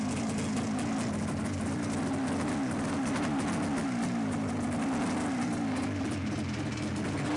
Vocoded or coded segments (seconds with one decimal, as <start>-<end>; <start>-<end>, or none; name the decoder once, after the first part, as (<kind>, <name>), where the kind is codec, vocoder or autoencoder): none